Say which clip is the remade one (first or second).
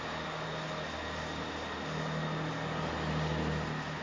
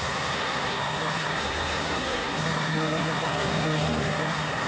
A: second